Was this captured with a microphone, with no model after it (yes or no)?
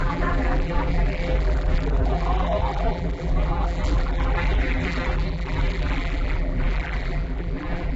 no